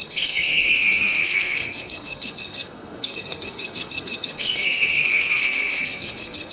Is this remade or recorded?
remade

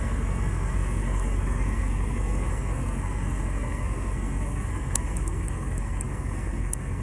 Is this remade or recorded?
remade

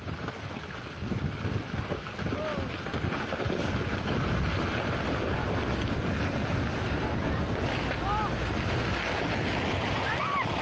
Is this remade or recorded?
recorded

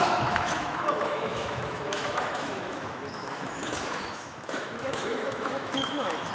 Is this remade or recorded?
remade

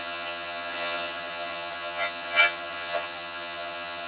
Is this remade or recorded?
remade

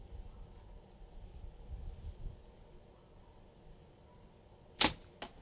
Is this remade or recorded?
recorded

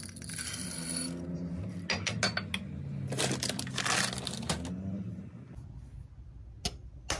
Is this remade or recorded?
recorded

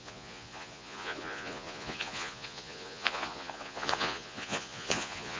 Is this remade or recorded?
remade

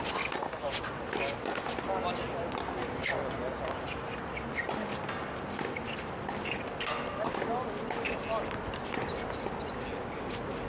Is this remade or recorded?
recorded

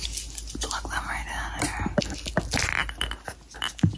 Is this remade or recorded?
recorded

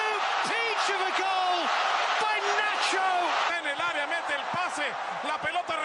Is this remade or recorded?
recorded